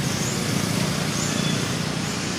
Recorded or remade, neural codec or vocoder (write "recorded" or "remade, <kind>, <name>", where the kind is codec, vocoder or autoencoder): recorded